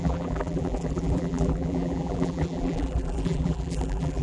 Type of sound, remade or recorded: remade